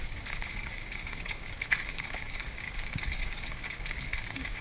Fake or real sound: fake